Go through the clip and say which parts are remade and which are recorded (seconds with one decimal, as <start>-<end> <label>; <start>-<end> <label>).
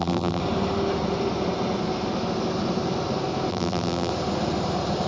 0.0-0.4 remade; 0.4-3.5 recorded; 3.5-4.1 remade; 4.1-5.1 recorded